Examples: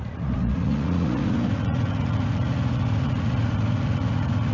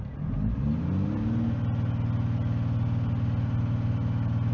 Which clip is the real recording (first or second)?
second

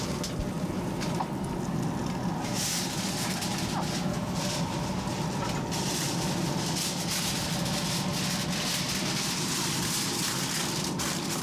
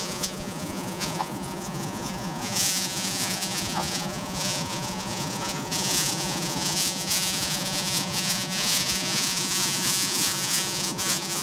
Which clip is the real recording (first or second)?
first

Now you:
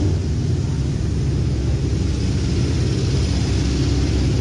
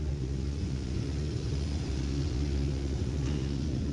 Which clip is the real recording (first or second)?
first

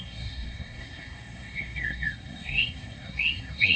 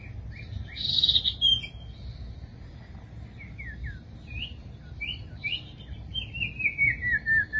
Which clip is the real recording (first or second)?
second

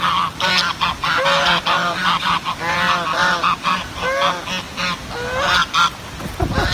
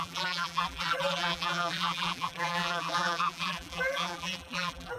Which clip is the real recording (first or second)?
first